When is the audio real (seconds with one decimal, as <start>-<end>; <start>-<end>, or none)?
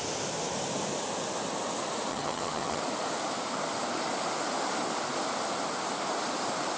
0.0-2.1; 2.8-6.8